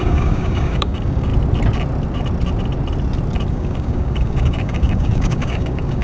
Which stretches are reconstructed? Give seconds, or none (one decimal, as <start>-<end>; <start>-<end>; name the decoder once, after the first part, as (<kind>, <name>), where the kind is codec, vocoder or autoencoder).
0.0-1.3 (codec, DAC); 3.5-6.0